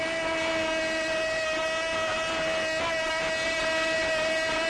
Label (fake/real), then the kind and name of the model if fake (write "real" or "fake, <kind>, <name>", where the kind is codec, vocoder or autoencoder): real